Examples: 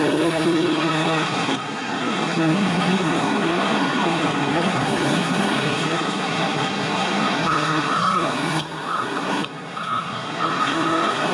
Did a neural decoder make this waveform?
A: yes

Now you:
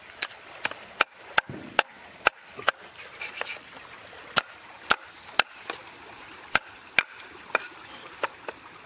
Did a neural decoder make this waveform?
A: no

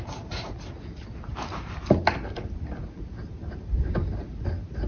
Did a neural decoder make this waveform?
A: no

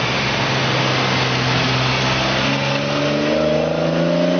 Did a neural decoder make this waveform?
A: no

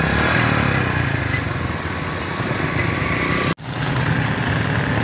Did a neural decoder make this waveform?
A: no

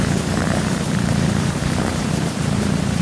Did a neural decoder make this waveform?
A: yes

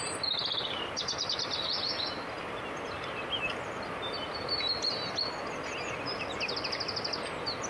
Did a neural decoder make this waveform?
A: no